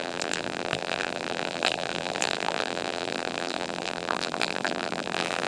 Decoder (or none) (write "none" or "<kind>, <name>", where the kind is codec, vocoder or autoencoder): vocoder, BigVGAN v2